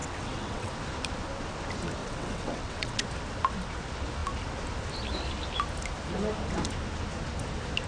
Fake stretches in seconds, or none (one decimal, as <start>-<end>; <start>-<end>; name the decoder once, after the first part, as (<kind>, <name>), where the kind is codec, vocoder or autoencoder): 0.0-0.7 (vocoder, WaveNeXt); 2.0-3.0